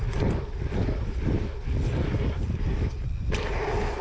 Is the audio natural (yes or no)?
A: no